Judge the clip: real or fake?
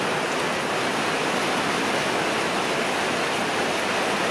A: real